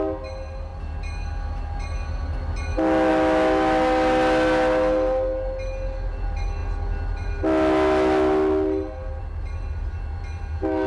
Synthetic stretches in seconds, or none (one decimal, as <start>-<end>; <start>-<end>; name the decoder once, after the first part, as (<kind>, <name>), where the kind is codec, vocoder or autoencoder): none